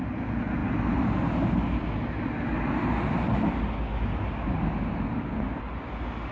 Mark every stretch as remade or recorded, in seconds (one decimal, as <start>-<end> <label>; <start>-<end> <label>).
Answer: 0.0-6.3 recorded